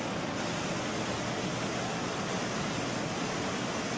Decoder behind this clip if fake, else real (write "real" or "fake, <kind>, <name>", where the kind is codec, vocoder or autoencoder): real